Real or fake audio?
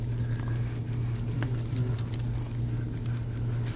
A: real